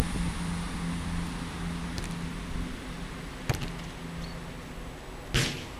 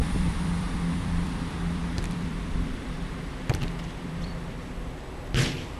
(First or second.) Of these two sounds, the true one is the first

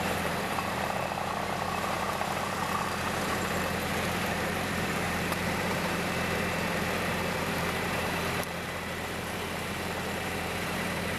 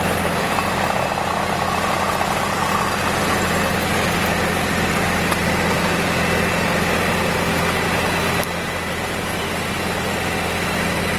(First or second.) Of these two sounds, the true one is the second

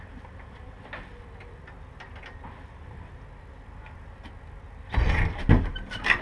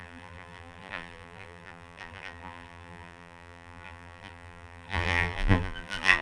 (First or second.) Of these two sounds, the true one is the first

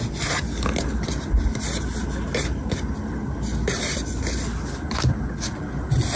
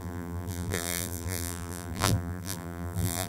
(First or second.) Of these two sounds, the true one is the first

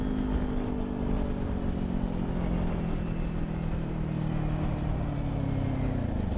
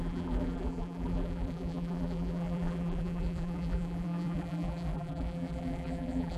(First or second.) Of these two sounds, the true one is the first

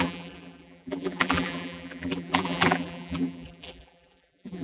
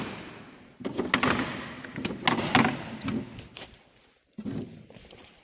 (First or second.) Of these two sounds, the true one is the second